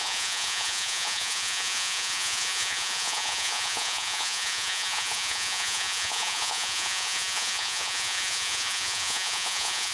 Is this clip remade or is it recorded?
remade